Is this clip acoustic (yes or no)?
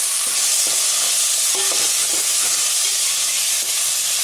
yes